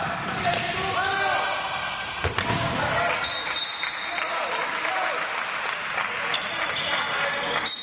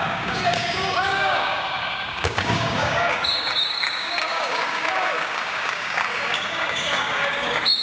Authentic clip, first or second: first